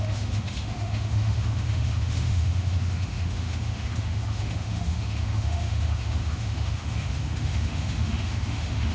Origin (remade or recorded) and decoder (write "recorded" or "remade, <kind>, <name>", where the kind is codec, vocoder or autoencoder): remade, autoencoder, DAC-VAE